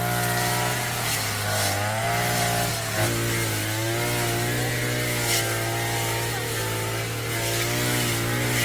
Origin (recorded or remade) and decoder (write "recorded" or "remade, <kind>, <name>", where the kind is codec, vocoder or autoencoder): recorded